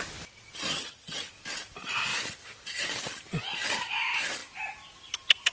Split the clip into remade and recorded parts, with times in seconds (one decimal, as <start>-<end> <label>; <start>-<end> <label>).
0.0-0.7 recorded; 0.7-1.3 remade; 1.3-5.5 recorded

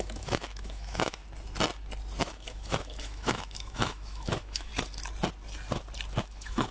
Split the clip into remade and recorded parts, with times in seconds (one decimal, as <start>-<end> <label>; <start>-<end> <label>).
0.0-1.2 remade; 1.2-2.2 recorded; 2.2-4.7 remade; 4.7-6.2 recorded; 6.2-6.7 remade

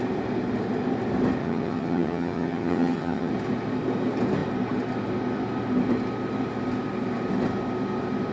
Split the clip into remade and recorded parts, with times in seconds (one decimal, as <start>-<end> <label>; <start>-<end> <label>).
0.0-1.4 recorded; 1.4-3.3 remade; 3.3-8.3 recorded

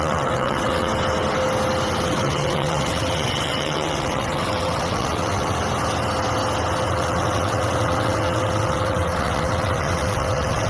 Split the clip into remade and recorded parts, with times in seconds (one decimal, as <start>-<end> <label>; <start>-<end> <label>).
0.0-0.9 remade; 0.9-2.0 recorded; 2.0-5.6 remade; 5.6-6.9 recorded; 6.9-10.7 remade

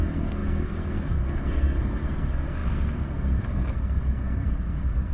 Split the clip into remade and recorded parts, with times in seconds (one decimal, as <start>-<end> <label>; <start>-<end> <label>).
0.0-5.1 remade